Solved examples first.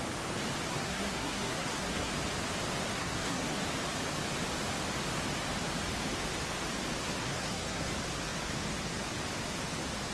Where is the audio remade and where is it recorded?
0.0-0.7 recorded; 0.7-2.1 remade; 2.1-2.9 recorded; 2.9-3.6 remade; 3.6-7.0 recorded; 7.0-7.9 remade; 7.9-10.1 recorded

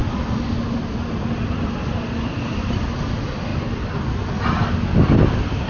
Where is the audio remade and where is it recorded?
0.0-1.5 recorded; 1.5-3.5 remade; 3.5-4.8 recorded; 4.8-5.7 remade

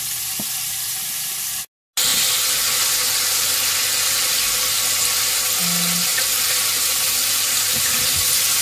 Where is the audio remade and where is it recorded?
0.0-6.1 recorded; 6.1-7.6 remade; 7.6-8.6 recorded